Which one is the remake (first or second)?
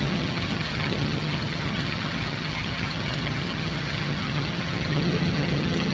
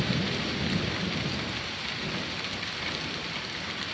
first